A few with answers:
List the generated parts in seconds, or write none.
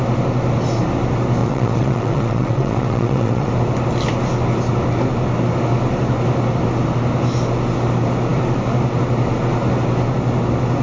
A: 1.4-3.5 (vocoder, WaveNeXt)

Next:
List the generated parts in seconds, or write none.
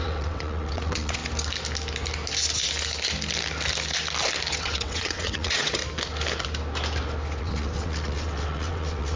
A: 0.0-1.2 (vocoder, WaveNeXt); 4.5-5.8; 7.4-9.2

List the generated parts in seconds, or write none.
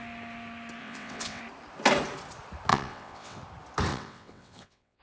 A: 0.8-1.4 (vocoder, WaveNeXt); 2.7-3.4; 3.9-5.0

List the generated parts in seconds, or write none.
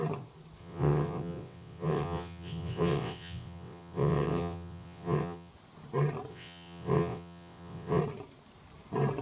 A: 0.6-5.5 (vocoder, WaveNeXt); 6.3-8.0